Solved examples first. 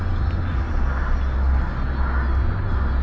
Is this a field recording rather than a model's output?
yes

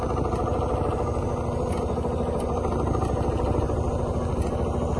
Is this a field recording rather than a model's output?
yes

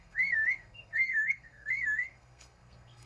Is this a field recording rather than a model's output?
no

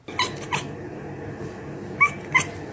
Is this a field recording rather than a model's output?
yes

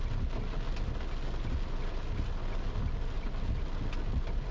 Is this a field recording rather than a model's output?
yes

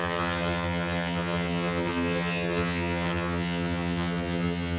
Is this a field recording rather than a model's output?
no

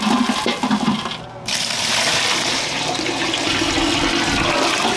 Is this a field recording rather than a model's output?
yes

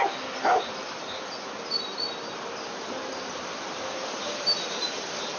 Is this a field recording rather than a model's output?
yes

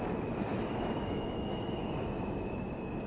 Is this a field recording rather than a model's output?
no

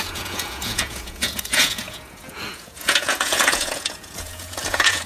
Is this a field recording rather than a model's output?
no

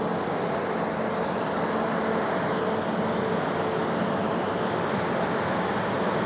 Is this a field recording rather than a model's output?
yes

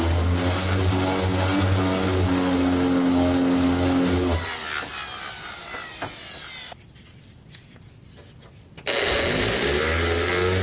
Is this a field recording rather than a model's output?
yes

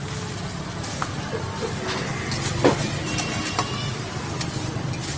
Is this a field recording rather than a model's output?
yes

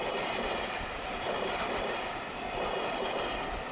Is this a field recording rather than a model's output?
yes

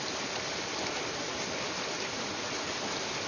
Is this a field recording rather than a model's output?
yes